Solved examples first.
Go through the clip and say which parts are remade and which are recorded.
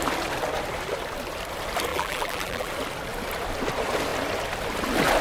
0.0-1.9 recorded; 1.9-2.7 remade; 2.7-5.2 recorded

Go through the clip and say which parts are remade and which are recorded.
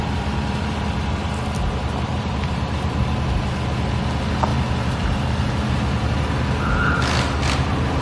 0.0-2.1 recorded; 2.1-2.9 remade; 2.9-4.5 recorded; 4.5-5.5 remade; 5.5-8.0 recorded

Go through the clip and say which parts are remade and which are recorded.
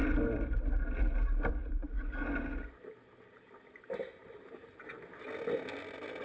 0.0-6.2 recorded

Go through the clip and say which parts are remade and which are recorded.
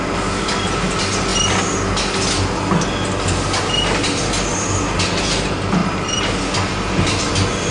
0.0-5.8 recorded; 5.8-6.3 remade; 6.3-6.7 recorded; 6.7-7.3 remade; 7.3-7.7 recorded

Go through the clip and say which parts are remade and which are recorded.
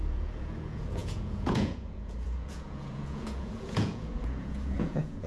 0.0-5.3 remade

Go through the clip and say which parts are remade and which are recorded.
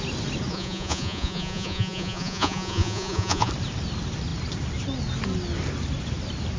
0.0-0.5 recorded; 0.5-3.5 remade; 3.5-6.6 recorded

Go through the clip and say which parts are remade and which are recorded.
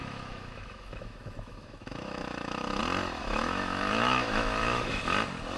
0.0-2.8 remade; 2.8-3.2 recorded; 3.2-5.0 remade; 5.0-5.6 recorded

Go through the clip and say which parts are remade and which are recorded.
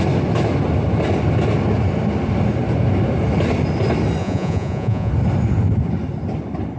0.0-4.2 recorded; 4.2-5.1 remade; 5.1-6.8 recorded